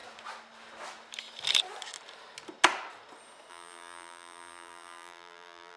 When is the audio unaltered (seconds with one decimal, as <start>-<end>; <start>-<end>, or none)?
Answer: 0.0-3.5